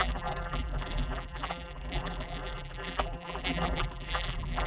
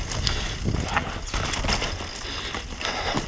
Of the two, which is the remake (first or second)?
first